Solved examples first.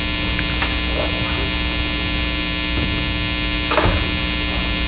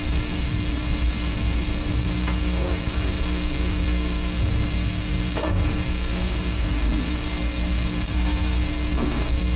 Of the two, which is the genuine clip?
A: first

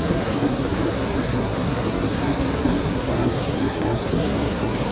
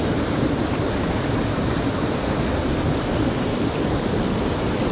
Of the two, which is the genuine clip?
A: second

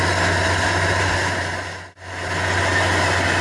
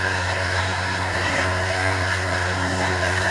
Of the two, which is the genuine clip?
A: first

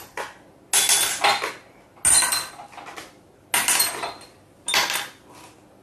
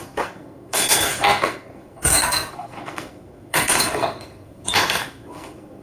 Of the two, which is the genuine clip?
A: first